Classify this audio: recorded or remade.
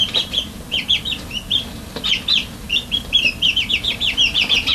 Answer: remade